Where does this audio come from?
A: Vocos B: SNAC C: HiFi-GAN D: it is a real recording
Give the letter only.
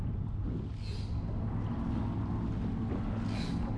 D